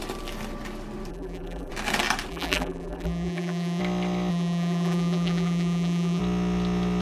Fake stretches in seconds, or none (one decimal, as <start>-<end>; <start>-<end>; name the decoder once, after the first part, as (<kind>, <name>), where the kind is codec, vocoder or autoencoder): 1.1-1.7 (vocoder, BigVGAN v2); 2.3-3.8; 4.3-6.2